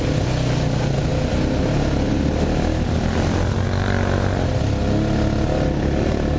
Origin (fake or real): real